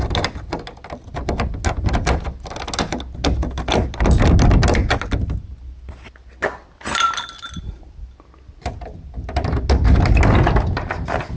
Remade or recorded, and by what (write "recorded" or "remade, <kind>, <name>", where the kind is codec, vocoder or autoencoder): recorded